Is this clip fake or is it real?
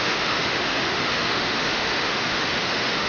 fake